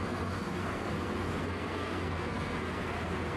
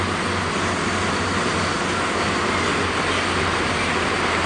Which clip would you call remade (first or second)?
first